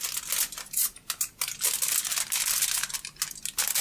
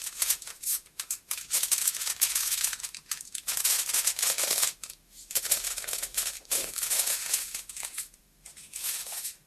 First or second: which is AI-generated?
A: second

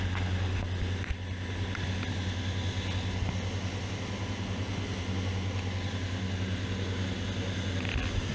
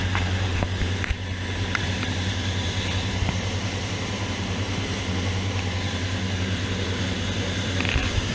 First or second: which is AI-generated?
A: second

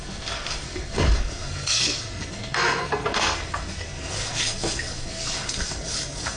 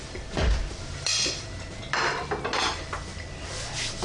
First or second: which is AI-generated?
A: first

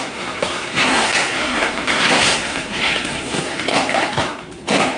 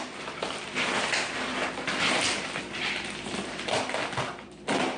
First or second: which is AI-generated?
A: first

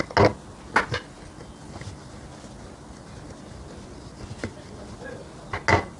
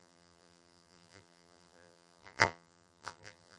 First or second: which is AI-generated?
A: second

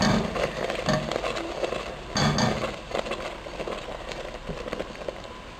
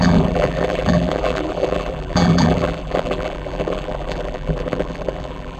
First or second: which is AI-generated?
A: second